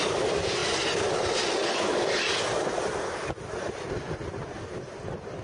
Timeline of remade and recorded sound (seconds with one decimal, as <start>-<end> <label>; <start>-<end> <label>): 0.0-5.4 recorded